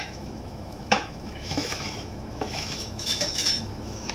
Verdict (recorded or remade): remade